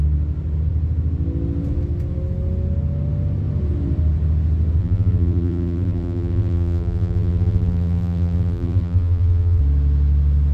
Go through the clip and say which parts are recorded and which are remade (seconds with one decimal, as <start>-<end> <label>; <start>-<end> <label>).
0.0-4.8 recorded; 4.8-9.6 remade; 9.6-10.5 recorded